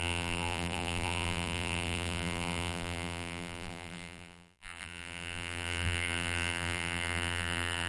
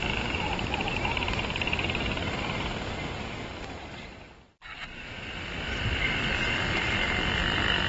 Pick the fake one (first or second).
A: first